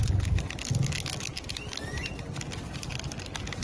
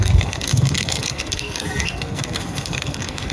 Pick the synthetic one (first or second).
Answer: second